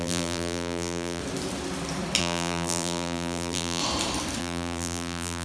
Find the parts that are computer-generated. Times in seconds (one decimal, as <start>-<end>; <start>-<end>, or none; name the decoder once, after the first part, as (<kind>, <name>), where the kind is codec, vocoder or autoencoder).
0.0-1.2 (vocoder, BigVGAN v2); 2.2-3.8; 4.4-5.4